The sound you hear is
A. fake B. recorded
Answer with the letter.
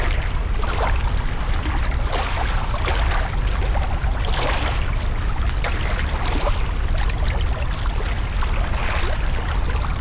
B